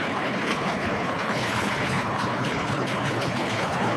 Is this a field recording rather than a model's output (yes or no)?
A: no